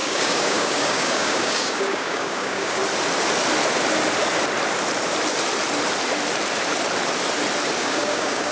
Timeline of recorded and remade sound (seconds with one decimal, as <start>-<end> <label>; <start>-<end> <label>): 0.0-2.8 remade; 2.8-7.8 recorded; 7.8-8.5 remade